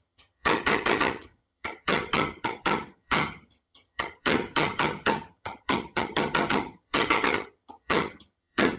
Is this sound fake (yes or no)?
yes